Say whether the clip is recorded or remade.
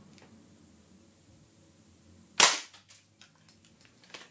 recorded